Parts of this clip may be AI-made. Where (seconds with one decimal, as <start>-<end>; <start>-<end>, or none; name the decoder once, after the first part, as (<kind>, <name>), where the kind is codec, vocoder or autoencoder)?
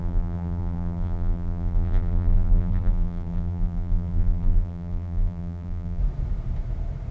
0.0-6.0 (vocoder, BigVGAN v2)